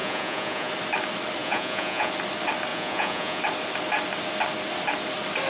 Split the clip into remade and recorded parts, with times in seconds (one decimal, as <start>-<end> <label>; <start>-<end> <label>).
0.0-0.7 remade; 0.7-1.4 recorded; 1.4-2.1 remade; 2.1-2.7 recorded; 2.7-3.4 remade; 3.4-5.5 recorded